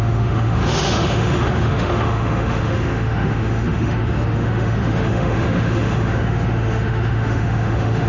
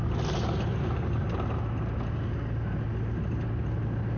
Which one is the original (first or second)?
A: second